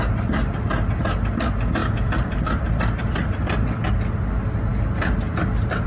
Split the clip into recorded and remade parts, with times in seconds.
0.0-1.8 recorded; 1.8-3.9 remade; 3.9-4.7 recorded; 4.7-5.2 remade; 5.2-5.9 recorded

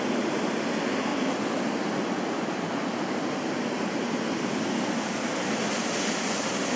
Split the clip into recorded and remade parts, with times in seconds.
0.0-6.8 recorded

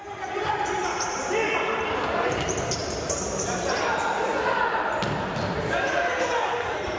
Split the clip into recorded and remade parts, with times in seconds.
0.0-1.2 remade; 1.2-2.0 recorded; 2.0-4.3 remade; 4.3-5.6 recorded; 5.6-7.0 remade